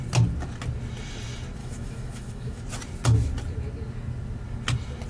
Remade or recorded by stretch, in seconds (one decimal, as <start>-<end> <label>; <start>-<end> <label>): 0.0-1.6 recorded; 1.6-2.6 remade; 2.6-5.1 recorded